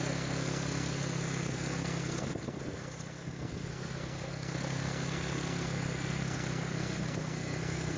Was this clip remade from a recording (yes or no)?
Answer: yes